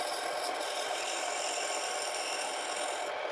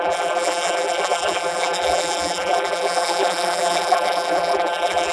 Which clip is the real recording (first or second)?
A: first